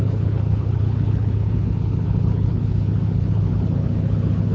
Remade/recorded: remade